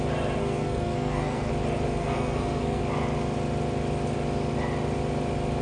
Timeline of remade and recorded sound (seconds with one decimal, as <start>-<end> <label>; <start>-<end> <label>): 0.0-0.4 recorded; 0.4-1.5 remade; 1.5-2.0 recorded; 2.0-2.8 remade; 2.8-5.6 recorded